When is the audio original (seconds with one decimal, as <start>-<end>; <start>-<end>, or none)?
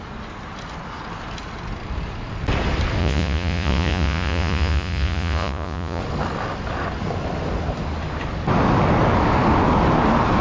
0.0-3.0; 6.0-10.4